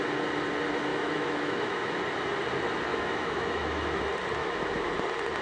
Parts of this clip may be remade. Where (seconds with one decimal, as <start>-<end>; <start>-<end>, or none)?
0.9-1.9; 2.9-4.0; 4.4-4.9